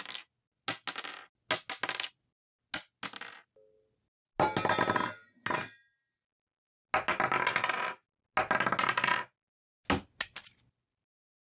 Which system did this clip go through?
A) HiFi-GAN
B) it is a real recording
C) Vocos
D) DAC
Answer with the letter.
B